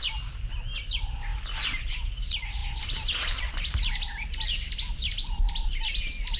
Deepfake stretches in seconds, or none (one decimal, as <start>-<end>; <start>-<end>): none